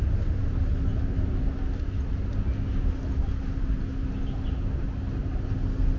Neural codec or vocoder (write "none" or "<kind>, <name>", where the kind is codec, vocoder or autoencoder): none